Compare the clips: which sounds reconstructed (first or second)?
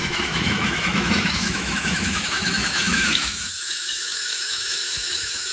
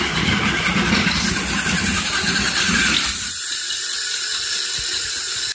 first